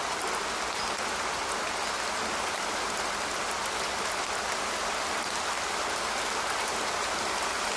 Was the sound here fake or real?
real